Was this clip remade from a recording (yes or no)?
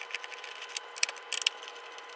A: no